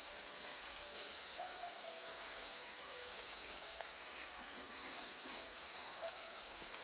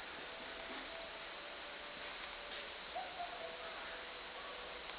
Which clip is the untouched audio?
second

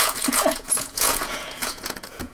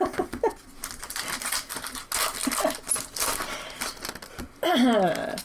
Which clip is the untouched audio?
second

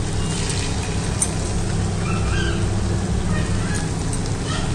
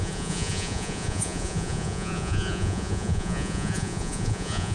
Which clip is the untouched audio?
first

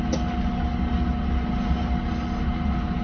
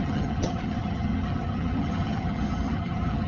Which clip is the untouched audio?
first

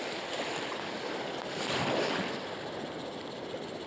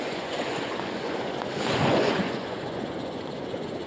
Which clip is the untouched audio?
first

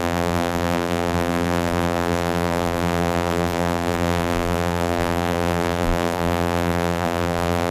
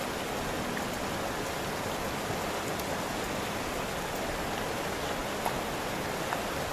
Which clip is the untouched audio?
second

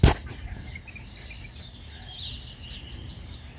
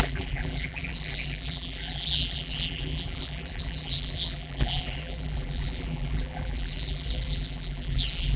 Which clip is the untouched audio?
first